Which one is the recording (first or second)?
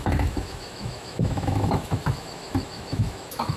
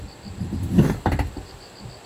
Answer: second